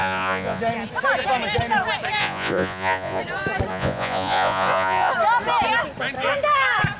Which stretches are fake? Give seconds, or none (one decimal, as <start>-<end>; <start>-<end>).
0.0-0.6; 2.2-3.2; 3.7-5.1